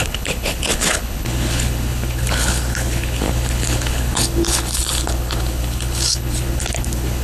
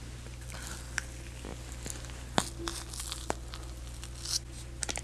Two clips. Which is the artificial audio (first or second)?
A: first